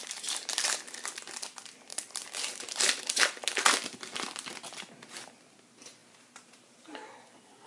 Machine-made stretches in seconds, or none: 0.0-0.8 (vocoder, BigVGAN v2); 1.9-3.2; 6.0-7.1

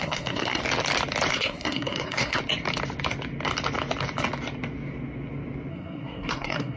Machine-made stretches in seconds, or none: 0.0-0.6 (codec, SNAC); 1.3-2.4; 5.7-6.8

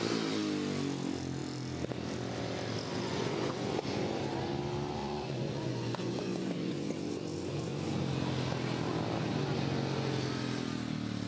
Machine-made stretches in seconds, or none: 2.9-4.2 (vocoder, Vocos); 5.0-8.0

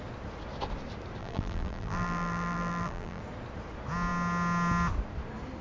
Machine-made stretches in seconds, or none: 1.2-3.2 (vocoder, BigVGAN v2)